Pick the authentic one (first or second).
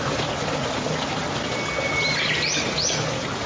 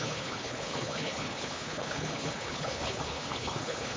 first